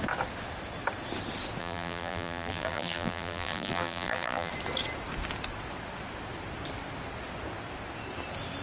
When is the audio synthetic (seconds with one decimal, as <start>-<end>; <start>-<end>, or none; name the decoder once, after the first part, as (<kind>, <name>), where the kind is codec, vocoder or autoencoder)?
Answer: 1.6-4.5 (vocoder, BigVGAN v2)